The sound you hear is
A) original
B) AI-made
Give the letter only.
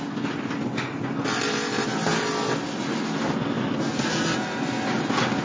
A